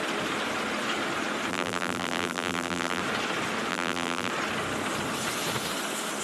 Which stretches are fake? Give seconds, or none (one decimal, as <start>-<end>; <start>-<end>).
1.5-3.0; 3.7-4.3

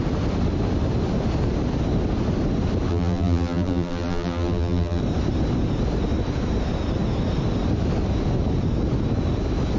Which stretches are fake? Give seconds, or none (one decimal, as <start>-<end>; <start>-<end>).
2.9-5.0

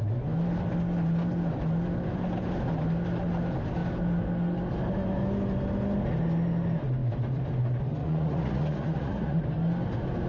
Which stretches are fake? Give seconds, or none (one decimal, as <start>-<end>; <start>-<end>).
8.0-9.4